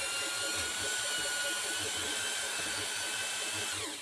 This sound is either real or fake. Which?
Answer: real